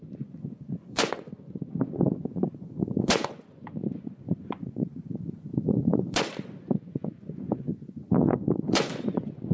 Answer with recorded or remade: remade